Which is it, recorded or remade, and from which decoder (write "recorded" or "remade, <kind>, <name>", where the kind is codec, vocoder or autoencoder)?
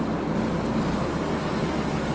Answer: recorded